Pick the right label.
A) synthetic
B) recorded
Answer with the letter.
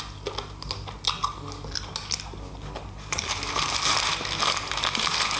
B